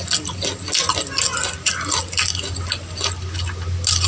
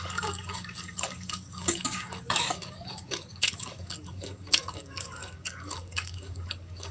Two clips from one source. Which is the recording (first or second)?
first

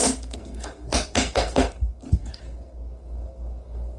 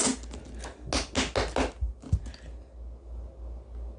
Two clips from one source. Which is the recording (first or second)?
second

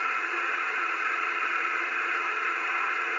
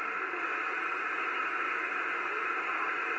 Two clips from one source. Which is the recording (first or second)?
second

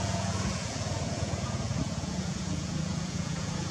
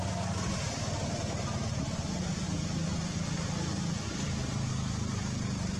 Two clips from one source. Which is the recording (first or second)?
second